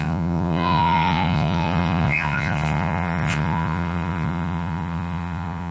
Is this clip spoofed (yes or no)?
yes